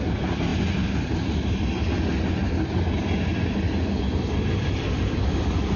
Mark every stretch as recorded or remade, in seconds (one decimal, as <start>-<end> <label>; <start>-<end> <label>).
0.0-5.8 recorded